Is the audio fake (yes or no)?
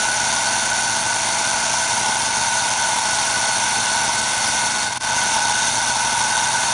no